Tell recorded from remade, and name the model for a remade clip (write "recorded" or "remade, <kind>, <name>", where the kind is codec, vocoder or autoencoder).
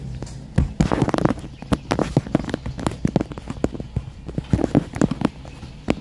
recorded